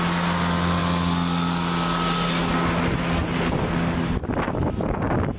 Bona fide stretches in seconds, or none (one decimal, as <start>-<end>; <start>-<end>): 0.0-5.4